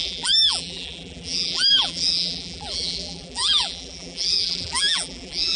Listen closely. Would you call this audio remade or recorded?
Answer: remade